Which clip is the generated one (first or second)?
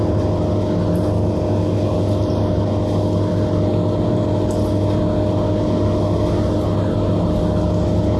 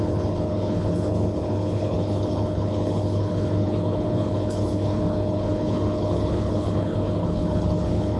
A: second